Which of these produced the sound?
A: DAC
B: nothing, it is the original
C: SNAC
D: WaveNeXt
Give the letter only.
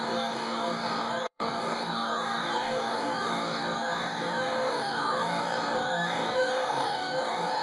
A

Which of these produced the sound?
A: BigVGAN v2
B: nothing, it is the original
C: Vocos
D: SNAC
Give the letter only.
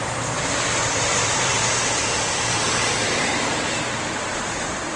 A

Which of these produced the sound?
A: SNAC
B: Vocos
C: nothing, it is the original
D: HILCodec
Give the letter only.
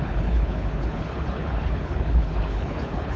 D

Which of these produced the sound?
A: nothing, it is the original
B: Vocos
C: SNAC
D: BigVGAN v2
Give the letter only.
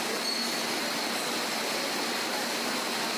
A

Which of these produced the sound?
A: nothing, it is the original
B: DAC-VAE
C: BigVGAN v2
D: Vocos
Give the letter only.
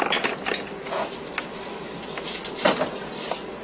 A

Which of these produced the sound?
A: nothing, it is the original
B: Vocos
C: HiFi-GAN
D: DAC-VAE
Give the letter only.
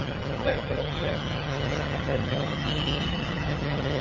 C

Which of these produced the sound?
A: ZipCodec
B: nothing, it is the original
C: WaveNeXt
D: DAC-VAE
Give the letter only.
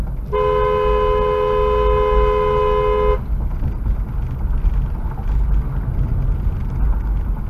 B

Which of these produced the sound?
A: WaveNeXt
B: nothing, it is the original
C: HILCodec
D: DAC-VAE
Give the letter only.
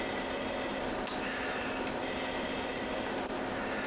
B